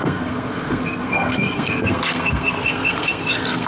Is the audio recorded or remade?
remade